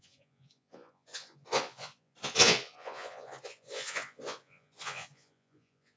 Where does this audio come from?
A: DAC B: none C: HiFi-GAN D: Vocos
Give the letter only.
D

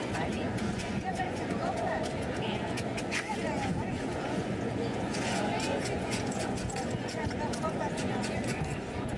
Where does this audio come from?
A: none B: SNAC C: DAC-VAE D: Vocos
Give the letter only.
D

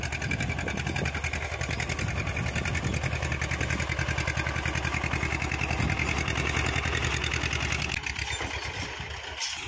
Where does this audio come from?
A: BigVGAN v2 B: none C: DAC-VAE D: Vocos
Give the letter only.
B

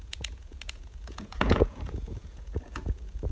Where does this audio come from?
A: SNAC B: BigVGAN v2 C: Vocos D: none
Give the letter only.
C